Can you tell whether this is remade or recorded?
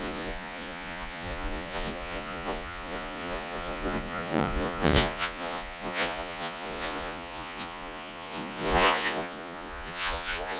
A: remade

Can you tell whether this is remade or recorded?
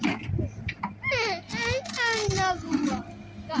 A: recorded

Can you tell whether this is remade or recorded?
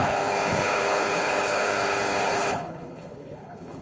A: remade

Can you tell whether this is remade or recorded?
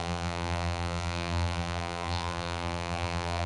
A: remade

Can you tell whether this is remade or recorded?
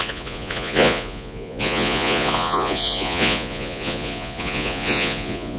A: remade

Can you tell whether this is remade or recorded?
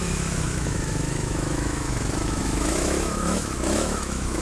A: remade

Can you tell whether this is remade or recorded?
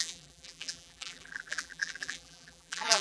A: remade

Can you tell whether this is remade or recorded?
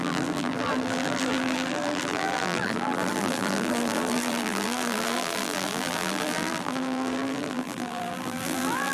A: remade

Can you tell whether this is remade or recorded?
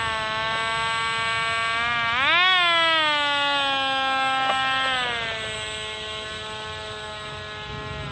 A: recorded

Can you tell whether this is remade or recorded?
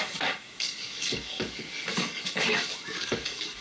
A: remade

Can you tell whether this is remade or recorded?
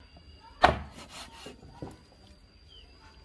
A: recorded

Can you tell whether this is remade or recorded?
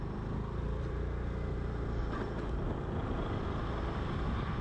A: recorded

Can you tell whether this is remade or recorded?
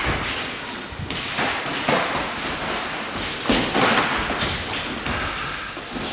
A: recorded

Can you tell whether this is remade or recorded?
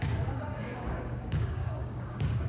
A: remade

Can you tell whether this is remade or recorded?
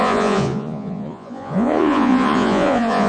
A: remade